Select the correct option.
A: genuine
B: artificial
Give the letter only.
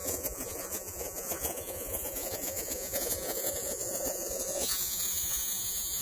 B